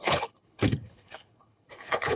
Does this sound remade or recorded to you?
remade